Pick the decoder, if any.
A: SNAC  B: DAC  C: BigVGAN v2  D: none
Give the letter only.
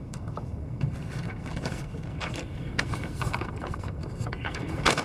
A